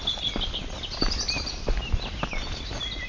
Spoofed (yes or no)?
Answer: no